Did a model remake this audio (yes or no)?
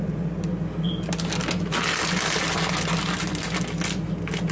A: no